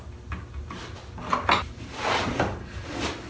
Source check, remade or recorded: recorded